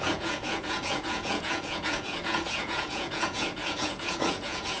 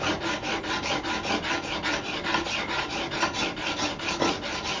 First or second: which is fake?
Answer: first